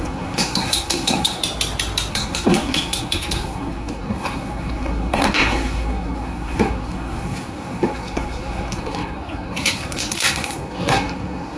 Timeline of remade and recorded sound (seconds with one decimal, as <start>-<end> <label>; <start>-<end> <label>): 0.0-1.4 remade; 1.4-2.1 recorded; 2.1-11.6 remade